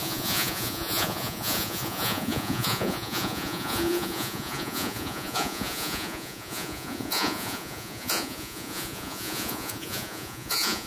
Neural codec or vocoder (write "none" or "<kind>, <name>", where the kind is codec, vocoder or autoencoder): vocoder, Vocos